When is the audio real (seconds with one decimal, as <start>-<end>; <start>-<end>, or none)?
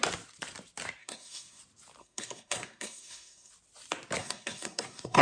0.0-1.0; 1.6-2.0; 3.5-4.2